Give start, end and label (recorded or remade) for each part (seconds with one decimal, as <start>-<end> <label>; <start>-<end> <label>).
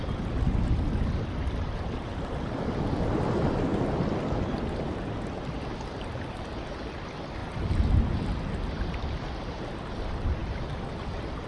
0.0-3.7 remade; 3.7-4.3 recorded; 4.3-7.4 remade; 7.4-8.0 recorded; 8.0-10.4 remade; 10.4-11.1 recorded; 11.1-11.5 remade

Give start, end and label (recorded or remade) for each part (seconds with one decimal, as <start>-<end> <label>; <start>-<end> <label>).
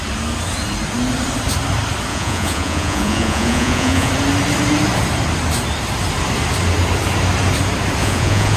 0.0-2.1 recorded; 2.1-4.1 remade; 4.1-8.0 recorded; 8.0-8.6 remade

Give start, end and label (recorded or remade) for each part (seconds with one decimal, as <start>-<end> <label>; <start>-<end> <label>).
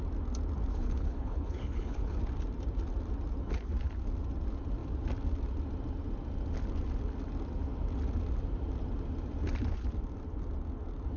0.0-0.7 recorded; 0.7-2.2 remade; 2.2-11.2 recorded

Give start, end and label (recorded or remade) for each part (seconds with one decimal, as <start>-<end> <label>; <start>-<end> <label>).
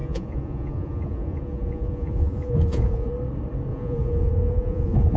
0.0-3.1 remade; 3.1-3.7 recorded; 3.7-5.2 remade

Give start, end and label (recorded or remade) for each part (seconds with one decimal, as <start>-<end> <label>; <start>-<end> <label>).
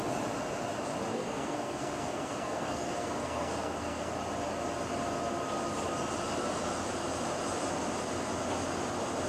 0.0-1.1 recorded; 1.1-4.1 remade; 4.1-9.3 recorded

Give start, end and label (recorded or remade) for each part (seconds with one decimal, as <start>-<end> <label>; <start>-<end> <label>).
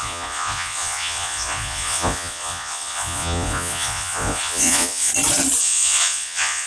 0.0-5.1 remade; 5.1-5.6 recorded; 5.6-6.7 remade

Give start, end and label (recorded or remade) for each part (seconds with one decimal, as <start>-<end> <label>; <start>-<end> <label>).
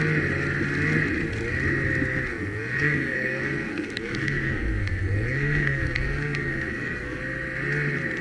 0.0-2.3 recorded; 2.3-7.2 remade; 7.2-8.2 recorded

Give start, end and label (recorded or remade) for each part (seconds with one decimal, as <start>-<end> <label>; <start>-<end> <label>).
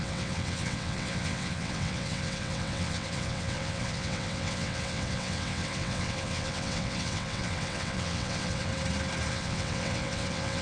0.0-8.7 remade; 8.7-9.3 recorded; 9.3-10.6 remade